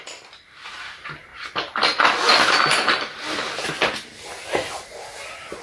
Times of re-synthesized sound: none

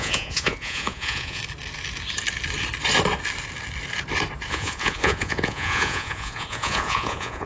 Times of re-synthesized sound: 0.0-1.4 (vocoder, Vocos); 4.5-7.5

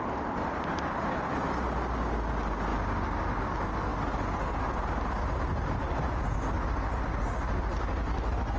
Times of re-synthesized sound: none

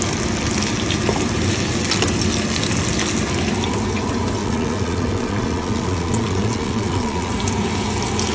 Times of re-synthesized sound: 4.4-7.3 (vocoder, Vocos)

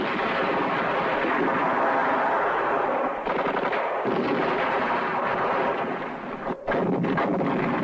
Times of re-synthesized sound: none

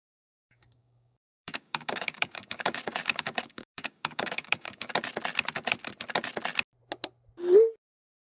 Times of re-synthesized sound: 0.4-4.9 (codec, DAC)

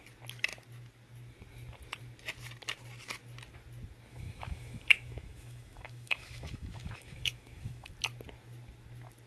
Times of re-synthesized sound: 4.1-7.9 (autoencoder, DAC-VAE)